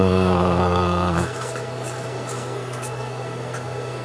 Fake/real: fake